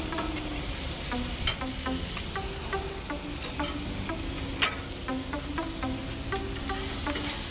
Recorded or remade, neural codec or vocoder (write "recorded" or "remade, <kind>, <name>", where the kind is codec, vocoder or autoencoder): recorded